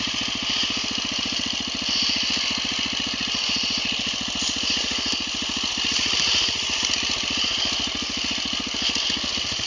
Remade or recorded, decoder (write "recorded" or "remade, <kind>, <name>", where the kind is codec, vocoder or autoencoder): recorded